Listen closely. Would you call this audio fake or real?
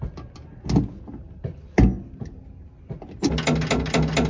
real